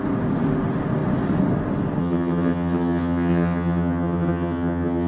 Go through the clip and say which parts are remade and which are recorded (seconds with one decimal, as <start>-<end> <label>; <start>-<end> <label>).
0.0-2.0 recorded; 2.0-5.1 remade